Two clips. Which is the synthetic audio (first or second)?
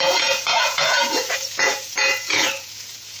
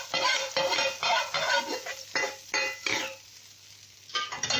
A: first